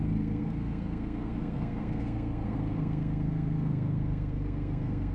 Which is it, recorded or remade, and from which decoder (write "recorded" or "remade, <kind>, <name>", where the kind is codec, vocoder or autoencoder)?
remade, codec, SNAC